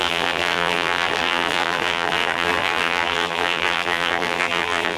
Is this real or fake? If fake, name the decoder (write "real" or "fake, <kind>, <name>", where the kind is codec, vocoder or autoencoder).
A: fake, vocoder, BigVGAN v2